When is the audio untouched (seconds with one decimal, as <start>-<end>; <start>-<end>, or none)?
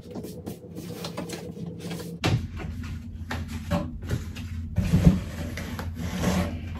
0.0-4.7; 5.3-6.8